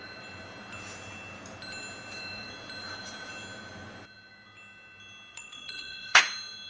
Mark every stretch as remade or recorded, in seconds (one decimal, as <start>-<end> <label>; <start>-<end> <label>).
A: 0.0-5.3 recorded; 5.3-6.2 remade; 6.2-6.7 recorded